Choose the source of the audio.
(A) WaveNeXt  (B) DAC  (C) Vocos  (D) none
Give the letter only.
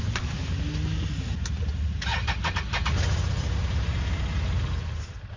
D